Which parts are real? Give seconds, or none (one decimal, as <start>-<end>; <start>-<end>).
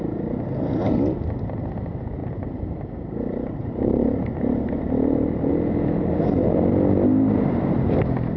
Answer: 0.0-2.2; 5.5-8.4